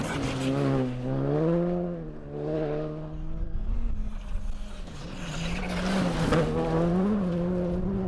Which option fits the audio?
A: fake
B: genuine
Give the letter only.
B